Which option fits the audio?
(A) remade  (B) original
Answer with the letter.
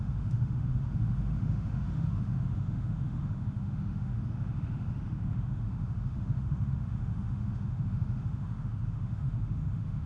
A